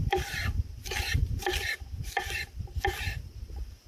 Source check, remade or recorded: remade